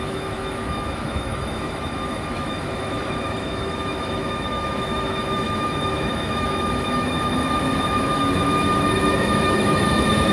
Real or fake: fake